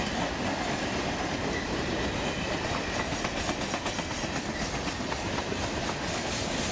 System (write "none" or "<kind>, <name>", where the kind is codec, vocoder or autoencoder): none